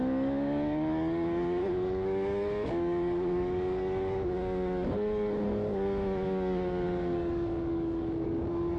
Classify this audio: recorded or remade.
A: remade